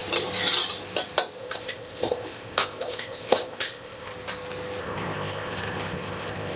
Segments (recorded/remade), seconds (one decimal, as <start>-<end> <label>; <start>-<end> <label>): 0.0-1.4 recorded; 1.4-4.1 remade; 4.1-4.8 recorded; 4.8-6.6 remade